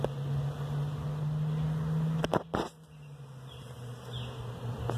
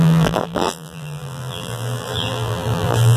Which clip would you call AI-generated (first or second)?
second